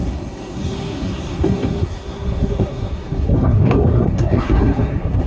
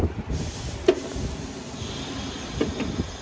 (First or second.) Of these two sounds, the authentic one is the second